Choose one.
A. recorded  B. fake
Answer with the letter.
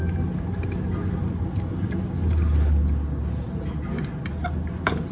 A